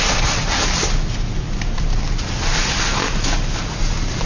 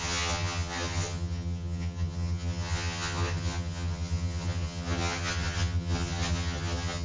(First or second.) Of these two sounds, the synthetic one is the second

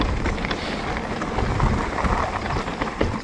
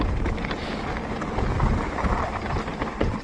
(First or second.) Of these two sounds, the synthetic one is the first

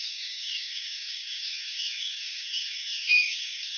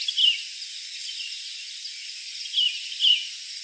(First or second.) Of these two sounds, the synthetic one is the first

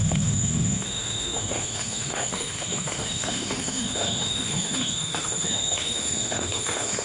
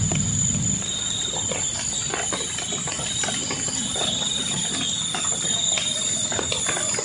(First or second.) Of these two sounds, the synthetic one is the first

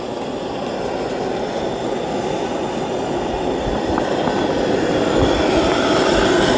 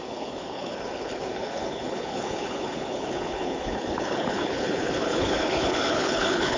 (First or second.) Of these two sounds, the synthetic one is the second